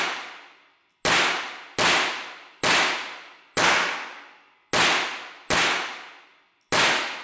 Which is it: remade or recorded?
recorded